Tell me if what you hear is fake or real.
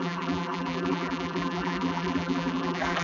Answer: fake